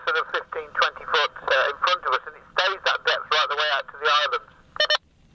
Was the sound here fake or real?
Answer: real